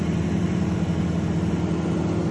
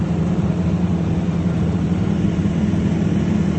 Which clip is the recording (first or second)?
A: first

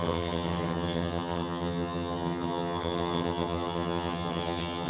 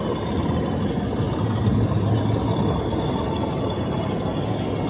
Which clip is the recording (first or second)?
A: second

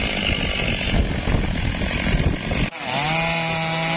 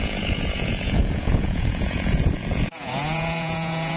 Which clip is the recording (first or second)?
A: first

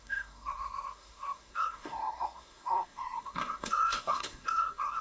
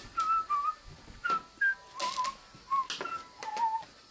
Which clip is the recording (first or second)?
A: second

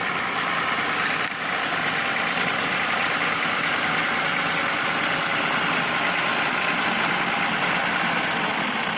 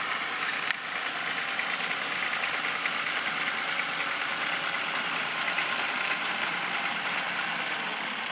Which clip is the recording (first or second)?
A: first